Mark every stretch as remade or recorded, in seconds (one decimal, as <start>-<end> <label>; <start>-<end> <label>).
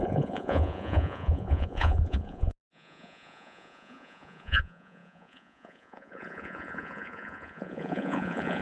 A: 0.0-8.6 remade